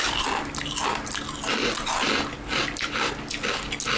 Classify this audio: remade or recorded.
recorded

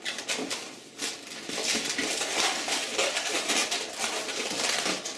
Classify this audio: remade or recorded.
recorded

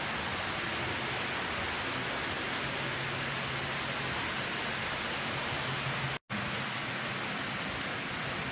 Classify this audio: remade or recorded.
recorded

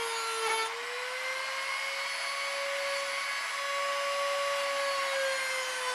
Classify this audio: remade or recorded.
recorded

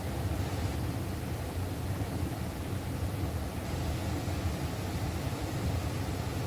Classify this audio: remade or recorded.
recorded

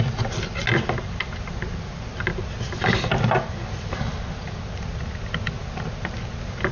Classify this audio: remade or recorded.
recorded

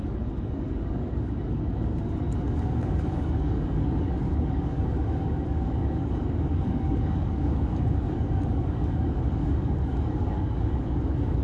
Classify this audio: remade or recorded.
remade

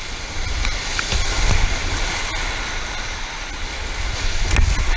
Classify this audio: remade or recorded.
recorded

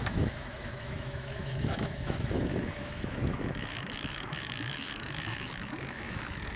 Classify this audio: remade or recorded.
remade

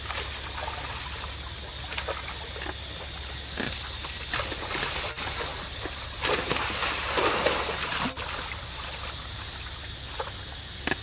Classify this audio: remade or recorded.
recorded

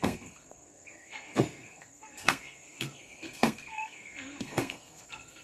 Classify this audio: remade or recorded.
remade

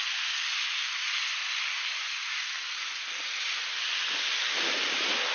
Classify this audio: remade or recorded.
recorded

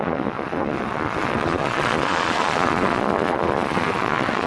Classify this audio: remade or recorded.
remade